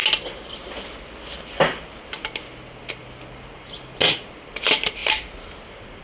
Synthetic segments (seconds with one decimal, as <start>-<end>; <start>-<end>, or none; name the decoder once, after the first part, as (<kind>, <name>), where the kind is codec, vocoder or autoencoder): none